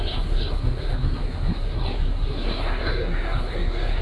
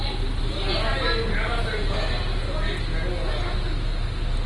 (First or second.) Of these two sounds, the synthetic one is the first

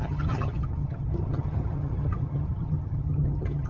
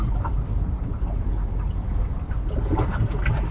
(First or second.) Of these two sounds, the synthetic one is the first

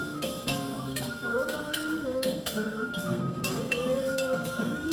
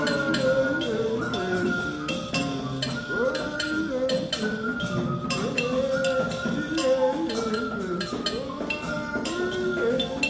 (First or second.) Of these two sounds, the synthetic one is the first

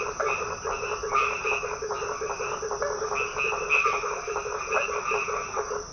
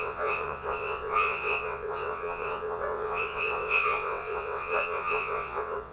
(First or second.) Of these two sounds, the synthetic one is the second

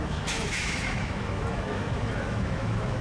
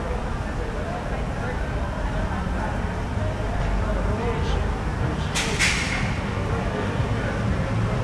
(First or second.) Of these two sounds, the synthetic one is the first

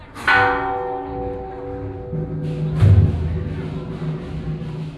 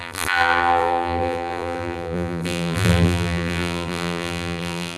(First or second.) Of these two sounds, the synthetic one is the second